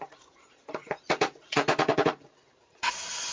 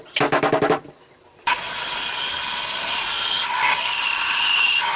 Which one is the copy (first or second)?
first